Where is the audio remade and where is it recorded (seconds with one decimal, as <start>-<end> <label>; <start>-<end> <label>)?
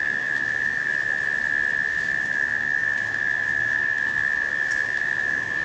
0.0-0.9 remade; 0.9-1.9 recorded; 1.9-5.6 remade